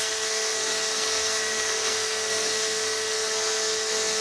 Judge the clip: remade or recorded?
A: remade